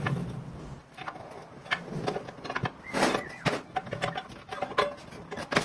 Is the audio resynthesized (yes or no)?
no